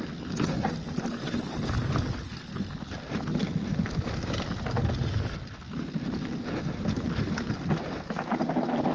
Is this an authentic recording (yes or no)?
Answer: yes